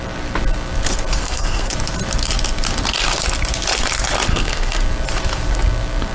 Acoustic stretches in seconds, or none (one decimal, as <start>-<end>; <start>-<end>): 0.0-1.2; 1.7-4.3; 4.8-6.1